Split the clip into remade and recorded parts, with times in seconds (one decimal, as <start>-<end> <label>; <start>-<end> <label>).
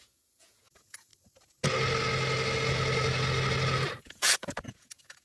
0.0-1.1 remade; 1.1-4.0 recorded; 4.0-5.2 remade